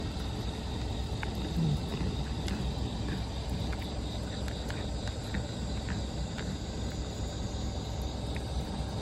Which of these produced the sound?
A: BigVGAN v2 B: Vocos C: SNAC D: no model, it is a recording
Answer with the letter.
D